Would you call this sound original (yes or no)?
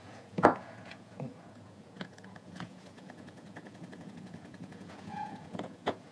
no